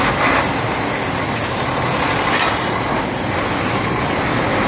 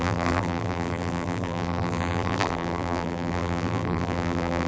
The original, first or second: first